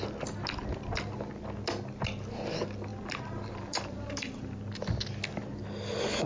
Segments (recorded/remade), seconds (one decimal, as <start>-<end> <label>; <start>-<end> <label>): 0.0-2.9 recorded; 2.9-4.6 remade; 4.6-6.3 recorded